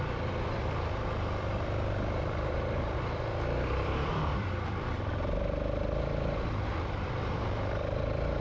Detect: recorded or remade remade